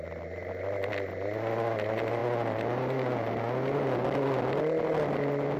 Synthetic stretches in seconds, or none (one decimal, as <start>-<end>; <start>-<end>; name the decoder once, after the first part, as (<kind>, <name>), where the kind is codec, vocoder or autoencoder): none